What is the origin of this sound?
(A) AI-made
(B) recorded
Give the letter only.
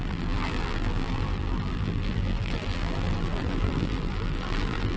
A